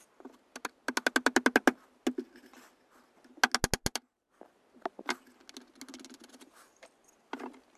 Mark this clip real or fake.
real